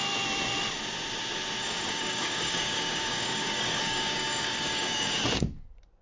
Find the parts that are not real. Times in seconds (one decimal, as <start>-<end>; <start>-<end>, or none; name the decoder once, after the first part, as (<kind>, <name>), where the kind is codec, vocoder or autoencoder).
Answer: 1.6-5.2 (codec, DAC)